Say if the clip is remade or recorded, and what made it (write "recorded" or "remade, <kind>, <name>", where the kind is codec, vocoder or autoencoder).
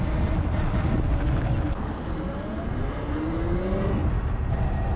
recorded